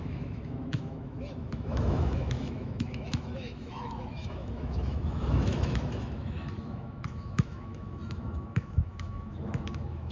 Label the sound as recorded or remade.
remade